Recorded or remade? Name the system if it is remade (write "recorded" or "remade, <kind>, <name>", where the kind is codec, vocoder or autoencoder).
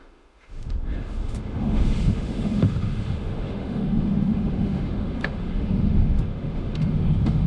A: remade, autoencoder, DAC-VAE